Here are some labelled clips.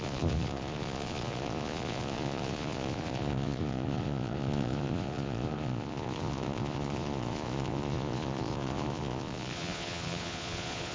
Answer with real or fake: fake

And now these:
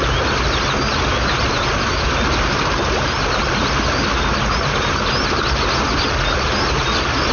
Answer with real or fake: real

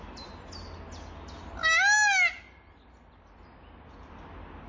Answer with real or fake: real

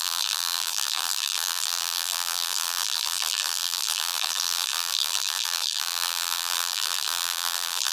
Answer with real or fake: fake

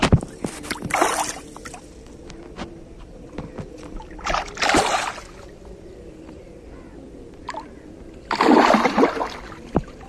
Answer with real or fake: fake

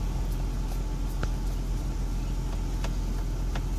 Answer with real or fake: real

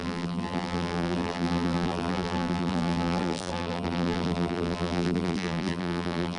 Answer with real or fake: fake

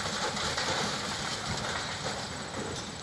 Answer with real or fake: real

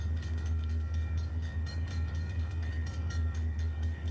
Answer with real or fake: fake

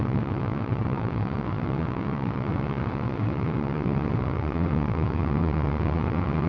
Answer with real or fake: fake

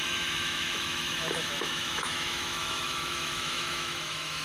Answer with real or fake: fake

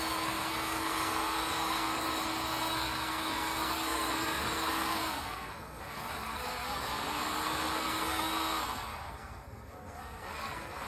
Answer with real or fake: fake